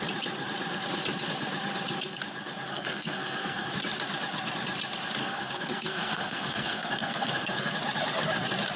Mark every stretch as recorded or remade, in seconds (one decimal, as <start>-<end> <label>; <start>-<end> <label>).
0.0-2.7 recorded; 2.7-3.7 remade; 3.7-5.2 recorded; 5.2-7.7 remade; 7.7-8.8 recorded